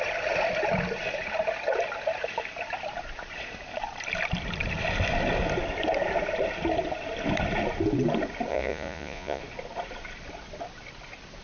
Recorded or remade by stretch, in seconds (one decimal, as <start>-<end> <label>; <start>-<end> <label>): 0.0-8.5 recorded; 8.5-9.4 remade; 9.4-11.4 recorded

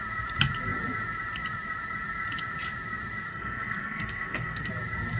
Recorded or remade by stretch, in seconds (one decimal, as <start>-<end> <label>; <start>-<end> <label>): 0.0-3.3 recorded; 3.3-4.7 remade; 4.7-5.2 recorded